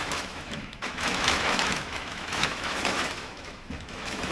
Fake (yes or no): yes